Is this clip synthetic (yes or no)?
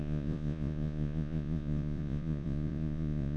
yes